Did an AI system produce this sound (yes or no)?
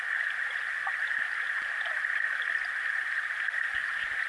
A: no